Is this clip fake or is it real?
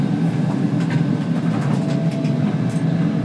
real